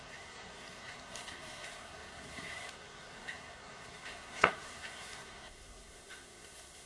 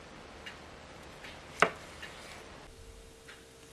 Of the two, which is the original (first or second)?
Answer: second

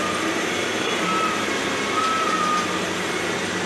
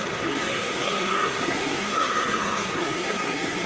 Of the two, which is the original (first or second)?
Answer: first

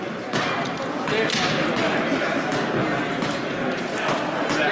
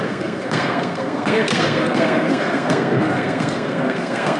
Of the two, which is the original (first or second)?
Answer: first